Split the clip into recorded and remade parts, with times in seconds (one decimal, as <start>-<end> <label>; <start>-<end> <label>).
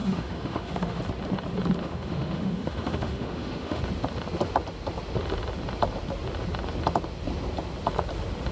0.0-1.0 remade; 1.0-1.8 recorded; 1.8-3.8 remade; 3.8-8.5 recorded